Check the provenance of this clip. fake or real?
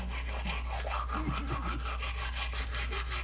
real